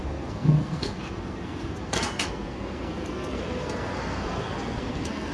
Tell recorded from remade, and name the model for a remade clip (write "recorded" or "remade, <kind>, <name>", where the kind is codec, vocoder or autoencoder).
remade, codec, SNAC